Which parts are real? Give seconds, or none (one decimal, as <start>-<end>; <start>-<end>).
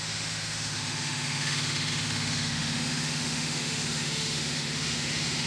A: none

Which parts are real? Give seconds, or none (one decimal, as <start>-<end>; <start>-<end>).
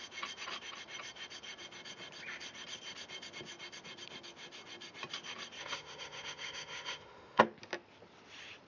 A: 0.0-5.6; 7.4-8.7